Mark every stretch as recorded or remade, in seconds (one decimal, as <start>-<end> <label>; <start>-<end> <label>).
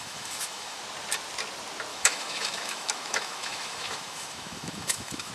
0.0-0.8 remade; 0.8-1.9 recorded; 1.9-5.3 remade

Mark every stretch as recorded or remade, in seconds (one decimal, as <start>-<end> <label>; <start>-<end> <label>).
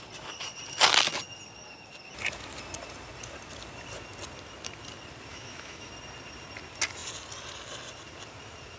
0.0-5.3 recorded; 5.3-5.9 remade; 5.9-8.8 recorded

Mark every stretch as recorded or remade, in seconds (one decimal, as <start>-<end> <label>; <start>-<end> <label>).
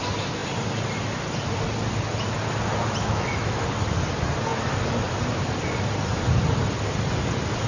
0.0-3.0 recorded; 3.0-3.6 remade; 3.6-7.7 recorded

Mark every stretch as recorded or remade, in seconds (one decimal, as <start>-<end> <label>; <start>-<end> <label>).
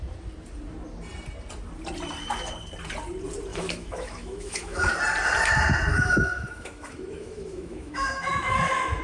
0.0-3.5 recorded; 3.5-4.9 remade; 4.9-5.9 recorded; 5.9-9.0 remade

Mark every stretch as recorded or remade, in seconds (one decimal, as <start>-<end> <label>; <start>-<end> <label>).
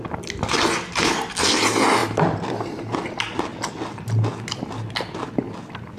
0.0-6.0 recorded